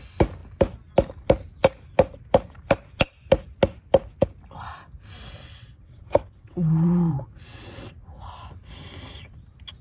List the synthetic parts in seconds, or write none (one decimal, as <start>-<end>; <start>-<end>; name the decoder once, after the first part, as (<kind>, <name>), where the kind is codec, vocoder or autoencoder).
5.4-7.9 (vocoder, WaveNeXt)